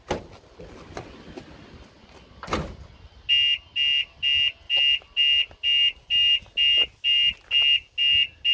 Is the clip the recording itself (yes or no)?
yes